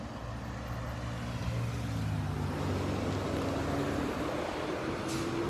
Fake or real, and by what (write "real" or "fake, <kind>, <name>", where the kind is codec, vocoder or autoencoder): real